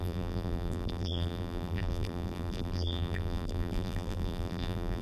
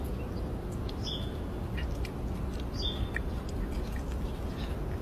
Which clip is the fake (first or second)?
first